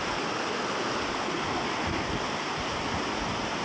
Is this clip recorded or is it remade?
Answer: recorded